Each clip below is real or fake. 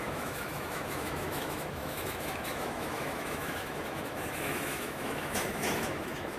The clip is fake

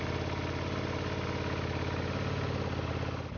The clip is real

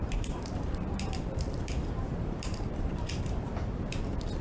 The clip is fake